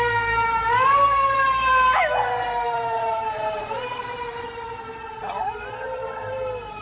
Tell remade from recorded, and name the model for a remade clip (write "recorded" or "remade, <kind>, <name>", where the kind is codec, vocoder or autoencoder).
remade, vocoder, BigVGAN v2